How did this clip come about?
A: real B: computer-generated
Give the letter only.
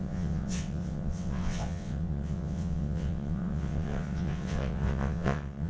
B